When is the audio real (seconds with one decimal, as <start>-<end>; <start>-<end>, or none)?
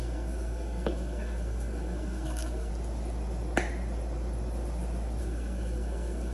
2.7-5.2